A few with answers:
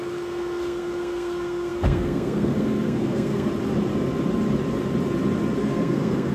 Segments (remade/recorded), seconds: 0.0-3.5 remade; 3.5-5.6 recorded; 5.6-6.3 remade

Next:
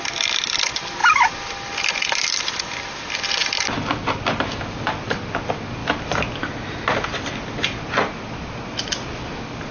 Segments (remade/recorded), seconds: 0.0-9.7 recorded

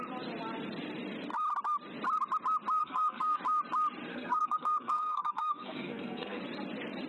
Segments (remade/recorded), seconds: 0.0-2.8 recorded; 2.8-3.4 remade; 3.4-4.1 recorded; 4.1-6.4 remade; 6.4-7.1 recorded

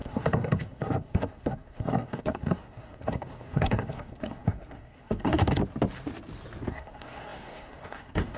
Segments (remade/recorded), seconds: 0.0-5.6 remade; 5.6-6.7 recorded; 6.7-8.4 remade

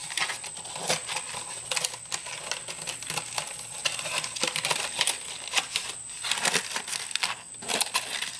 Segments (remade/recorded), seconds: 0.0-6.9 recorded; 6.9-7.5 remade; 7.5-8.4 recorded

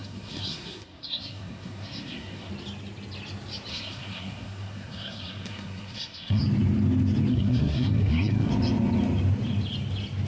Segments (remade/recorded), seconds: 0.0-2.5 remade; 2.5-3.7 recorded; 3.7-6.4 remade; 6.4-7.3 recorded; 7.3-8.5 remade; 8.5-10.3 recorded